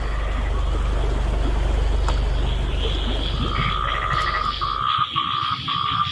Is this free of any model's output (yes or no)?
yes